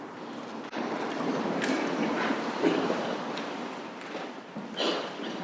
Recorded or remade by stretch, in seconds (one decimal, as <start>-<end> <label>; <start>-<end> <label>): 0.0-1.3 recorded; 1.3-4.5 remade; 4.5-5.4 recorded